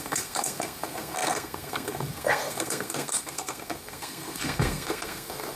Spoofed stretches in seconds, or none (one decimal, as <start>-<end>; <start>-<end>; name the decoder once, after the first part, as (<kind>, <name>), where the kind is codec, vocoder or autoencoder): 0.0-5.6 (codec, SNAC)